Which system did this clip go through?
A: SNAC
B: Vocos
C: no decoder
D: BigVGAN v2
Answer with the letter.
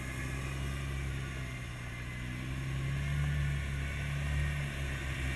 C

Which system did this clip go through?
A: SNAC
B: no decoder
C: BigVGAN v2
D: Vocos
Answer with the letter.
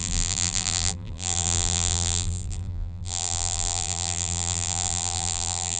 C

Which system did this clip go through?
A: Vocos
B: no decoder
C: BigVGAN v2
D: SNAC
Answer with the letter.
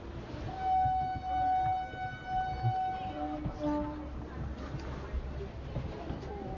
B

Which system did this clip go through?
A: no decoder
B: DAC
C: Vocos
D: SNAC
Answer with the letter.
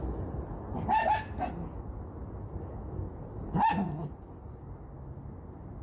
A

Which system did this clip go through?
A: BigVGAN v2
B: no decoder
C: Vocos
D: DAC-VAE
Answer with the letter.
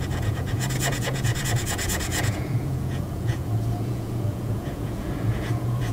C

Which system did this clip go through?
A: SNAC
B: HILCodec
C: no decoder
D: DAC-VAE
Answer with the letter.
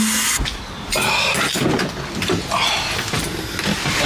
C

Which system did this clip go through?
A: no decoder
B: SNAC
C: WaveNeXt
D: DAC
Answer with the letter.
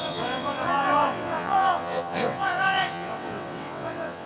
C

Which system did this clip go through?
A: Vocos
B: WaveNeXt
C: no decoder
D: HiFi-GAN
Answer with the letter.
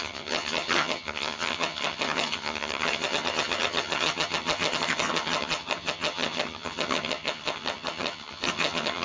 D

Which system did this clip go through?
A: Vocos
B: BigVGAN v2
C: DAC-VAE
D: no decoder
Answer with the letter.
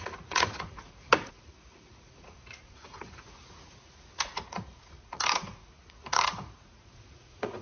A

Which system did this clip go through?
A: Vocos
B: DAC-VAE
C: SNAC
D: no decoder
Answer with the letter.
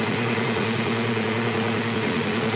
A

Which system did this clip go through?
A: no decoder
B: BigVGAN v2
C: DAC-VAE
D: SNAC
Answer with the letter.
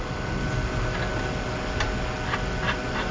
A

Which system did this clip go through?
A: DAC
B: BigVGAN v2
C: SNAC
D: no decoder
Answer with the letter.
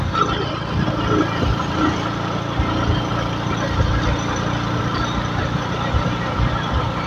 D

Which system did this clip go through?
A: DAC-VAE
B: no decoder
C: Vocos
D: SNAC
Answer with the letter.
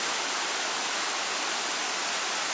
B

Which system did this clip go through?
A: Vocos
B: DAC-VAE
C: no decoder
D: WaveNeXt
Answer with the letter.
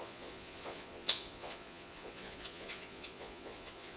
A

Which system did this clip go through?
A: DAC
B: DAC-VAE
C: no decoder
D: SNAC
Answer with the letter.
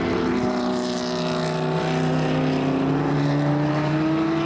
C